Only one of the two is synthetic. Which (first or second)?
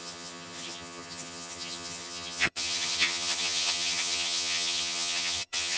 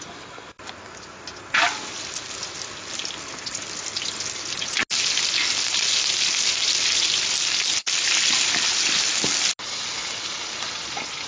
first